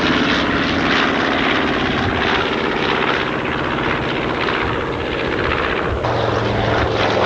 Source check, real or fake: real